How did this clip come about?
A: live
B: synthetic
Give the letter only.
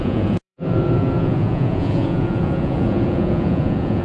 B